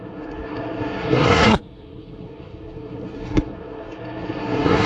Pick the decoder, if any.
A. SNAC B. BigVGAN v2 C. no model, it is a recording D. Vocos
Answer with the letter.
A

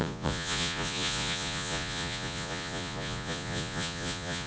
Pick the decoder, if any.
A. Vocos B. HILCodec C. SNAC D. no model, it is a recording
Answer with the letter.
A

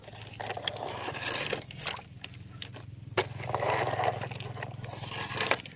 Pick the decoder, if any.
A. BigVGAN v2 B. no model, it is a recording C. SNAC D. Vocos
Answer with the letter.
B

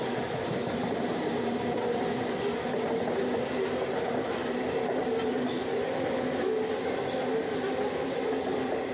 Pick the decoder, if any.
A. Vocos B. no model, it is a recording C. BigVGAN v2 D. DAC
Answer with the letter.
B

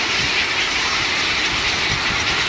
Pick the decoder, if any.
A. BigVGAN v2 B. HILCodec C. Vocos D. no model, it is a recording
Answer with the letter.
D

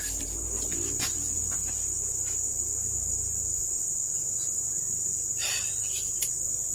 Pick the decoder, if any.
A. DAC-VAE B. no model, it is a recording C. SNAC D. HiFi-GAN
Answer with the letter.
B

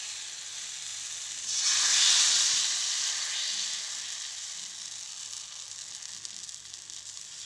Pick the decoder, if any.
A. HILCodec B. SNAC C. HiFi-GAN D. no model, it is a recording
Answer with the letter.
D